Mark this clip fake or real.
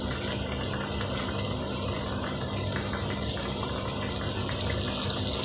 real